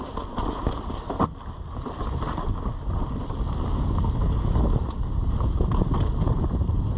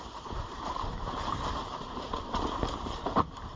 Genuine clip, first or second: first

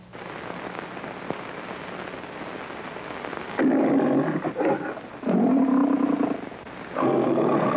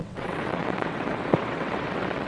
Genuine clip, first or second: first